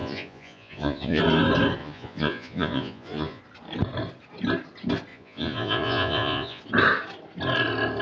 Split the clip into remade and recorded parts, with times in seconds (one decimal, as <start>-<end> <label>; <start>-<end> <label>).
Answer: 0.0-1.2 remade; 1.2-1.8 recorded; 1.8-3.4 remade; 3.4-5.1 recorded; 5.1-6.6 remade; 6.6-8.0 recorded